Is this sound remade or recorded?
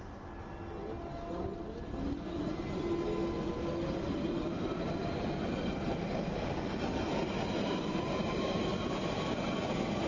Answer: recorded